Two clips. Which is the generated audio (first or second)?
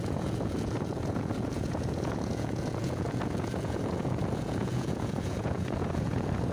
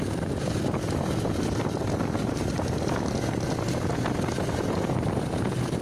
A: first